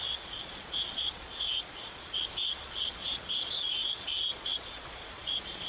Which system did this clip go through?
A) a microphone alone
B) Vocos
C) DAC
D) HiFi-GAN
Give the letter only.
B